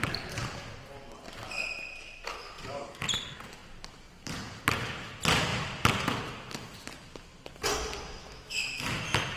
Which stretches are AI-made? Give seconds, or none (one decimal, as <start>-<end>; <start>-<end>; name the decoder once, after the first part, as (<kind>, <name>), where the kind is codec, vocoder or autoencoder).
8.2-9.0 (autoencoder, DAC-VAE)